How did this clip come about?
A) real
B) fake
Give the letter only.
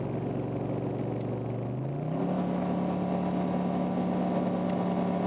A